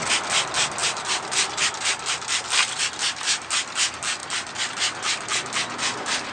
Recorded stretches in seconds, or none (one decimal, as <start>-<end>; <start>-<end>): 0.0-0.8; 1.5-4.2; 4.7-6.3